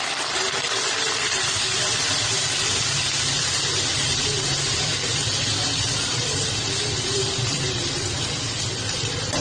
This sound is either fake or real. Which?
fake